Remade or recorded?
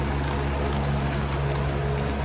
recorded